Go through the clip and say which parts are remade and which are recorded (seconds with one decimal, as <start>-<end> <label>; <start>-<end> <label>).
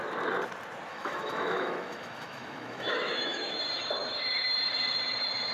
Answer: 0.0-0.9 recorded; 0.9-3.6 remade; 3.6-5.5 recorded